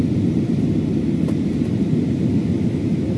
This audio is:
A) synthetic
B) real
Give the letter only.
B